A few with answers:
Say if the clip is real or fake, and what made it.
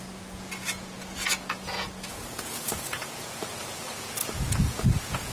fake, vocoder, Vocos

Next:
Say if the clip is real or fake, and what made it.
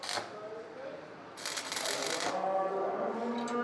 real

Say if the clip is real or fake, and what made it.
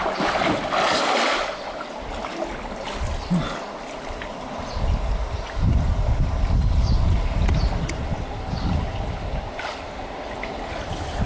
real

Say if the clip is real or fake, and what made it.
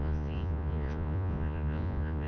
fake, vocoder, Vocos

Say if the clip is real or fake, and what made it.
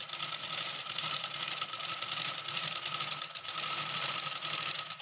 real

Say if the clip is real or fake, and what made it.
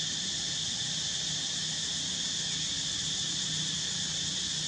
real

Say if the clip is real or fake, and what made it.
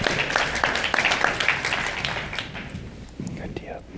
real